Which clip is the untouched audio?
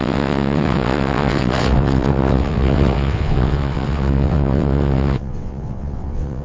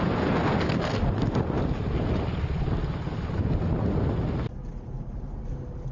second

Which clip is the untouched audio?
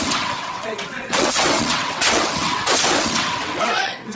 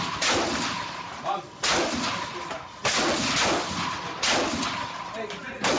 second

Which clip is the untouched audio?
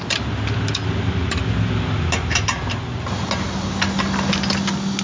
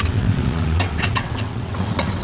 first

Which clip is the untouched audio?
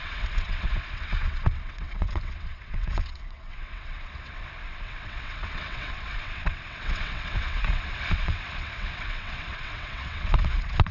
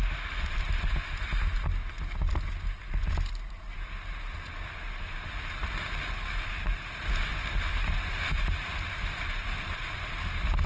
second